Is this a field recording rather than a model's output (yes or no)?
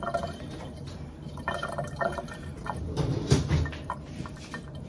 no